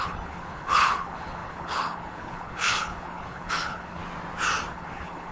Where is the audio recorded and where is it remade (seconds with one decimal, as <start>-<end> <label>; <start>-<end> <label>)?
0.0-4.0 remade; 4.0-4.7 recorded; 4.7-5.3 remade